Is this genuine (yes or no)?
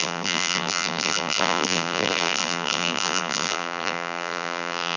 no